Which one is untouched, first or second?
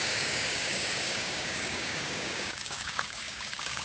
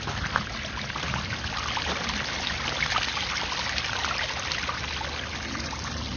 second